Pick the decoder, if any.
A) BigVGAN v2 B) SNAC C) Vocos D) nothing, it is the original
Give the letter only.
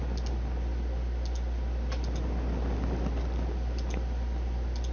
D